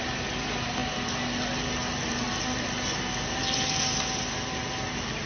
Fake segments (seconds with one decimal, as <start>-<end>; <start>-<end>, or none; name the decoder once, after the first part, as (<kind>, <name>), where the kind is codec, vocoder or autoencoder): none